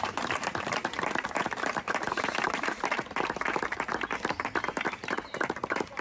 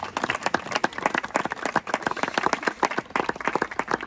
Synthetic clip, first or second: first